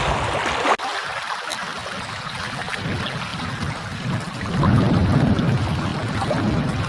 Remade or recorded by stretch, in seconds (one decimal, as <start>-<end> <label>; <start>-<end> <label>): 0.0-1.5 recorded; 1.5-2.8 remade; 2.8-3.3 recorded; 3.3-4.5 remade; 4.5-5.9 recorded; 5.9-6.9 remade

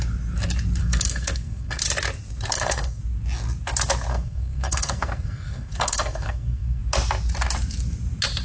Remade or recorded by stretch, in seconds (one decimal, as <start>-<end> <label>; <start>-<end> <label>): 0.0-0.8 recorded; 0.8-1.8 remade; 1.8-2.5 recorded; 2.5-3.0 remade; 3.0-4.1 recorded; 4.1-6.8 remade; 6.8-8.4 recorded

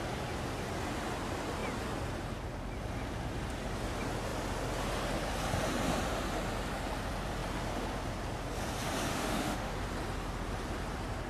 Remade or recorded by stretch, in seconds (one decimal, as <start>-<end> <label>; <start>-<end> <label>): 0.0-9.1 recorded; 9.1-9.7 remade; 9.7-11.3 recorded